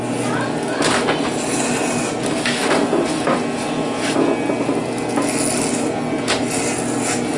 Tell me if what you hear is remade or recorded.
recorded